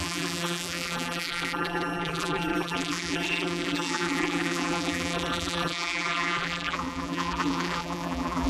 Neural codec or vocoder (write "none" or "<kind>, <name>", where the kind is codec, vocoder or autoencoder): vocoder, BigVGAN v2